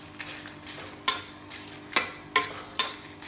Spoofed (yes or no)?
no